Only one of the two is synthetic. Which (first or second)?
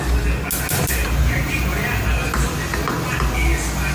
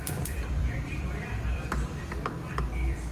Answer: second